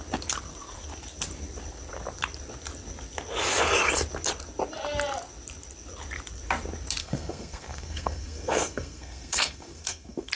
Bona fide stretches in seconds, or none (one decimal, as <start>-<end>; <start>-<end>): 0.0-7.0